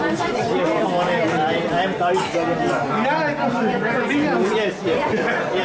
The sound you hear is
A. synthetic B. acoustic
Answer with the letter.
B